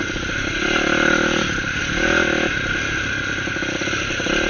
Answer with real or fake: real